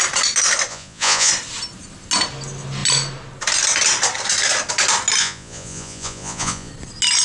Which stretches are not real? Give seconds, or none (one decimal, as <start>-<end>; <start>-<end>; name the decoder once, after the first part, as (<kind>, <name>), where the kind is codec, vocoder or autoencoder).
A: 0.7-1.3 (vocoder, Vocos); 5.2-6.7